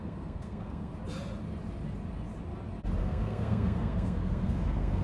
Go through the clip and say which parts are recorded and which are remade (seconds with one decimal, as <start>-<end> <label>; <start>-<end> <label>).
0.0-0.9 remade; 0.9-3.0 recorded; 3.0-5.0 remade